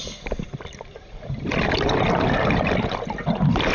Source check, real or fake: real